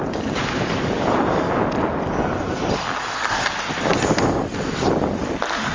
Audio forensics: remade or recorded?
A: recorded